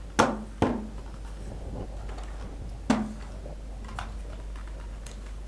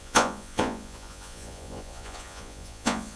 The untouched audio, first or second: first